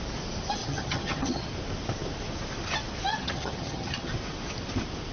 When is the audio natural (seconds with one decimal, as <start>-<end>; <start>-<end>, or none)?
0.0-0.6; 1.5-3.1; 4.1-5.1